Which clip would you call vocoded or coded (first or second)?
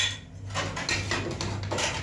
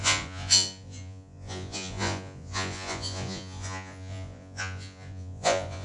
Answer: second